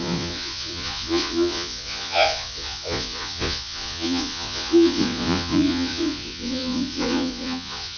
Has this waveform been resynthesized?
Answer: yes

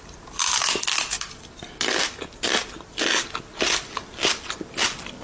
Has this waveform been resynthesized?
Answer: no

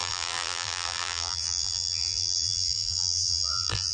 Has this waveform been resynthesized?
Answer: yes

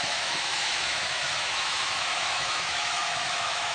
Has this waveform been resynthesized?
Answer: yes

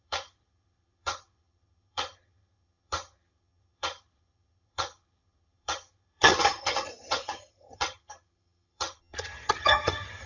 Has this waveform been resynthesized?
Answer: yes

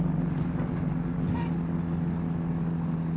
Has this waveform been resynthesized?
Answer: no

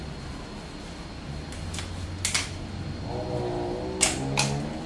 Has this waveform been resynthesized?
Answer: no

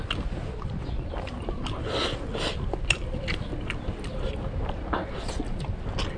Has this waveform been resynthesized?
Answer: no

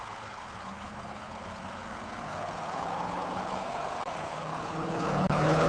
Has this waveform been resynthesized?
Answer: yes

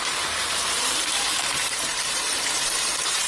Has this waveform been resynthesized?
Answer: yes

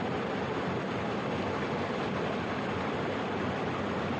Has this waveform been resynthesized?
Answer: no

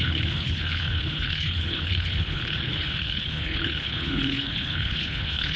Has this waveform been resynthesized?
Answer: yes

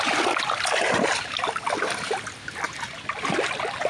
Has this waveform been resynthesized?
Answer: no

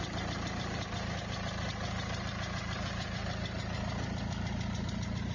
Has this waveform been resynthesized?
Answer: yes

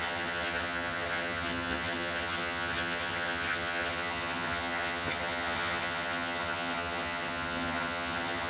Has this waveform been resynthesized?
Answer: yes